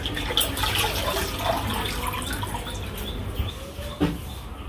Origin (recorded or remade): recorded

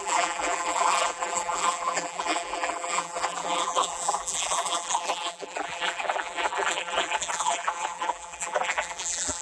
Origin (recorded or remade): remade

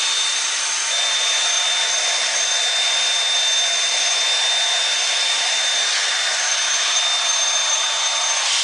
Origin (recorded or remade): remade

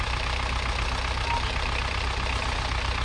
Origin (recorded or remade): recorded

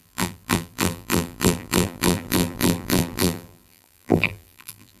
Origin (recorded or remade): remade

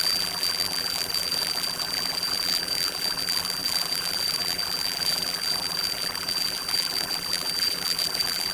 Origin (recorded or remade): remade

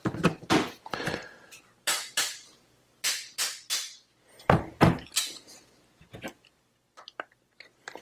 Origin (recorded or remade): remade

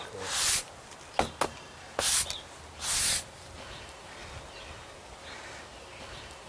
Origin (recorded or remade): recorded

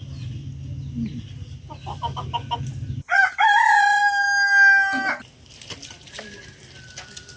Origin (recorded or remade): recorded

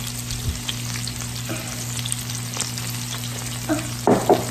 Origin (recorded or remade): recorded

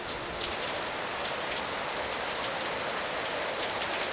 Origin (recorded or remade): recorded